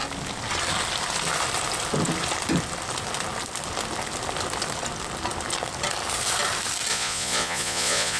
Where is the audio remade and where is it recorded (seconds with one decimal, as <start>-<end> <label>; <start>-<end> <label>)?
0.0-6.9 recorded; 6.9-8.2 remade